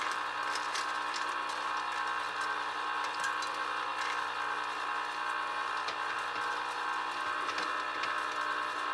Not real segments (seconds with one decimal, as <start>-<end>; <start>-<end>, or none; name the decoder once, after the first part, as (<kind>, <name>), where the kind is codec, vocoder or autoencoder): none